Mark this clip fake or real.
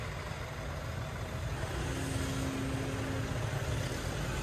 real